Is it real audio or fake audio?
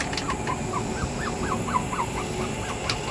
real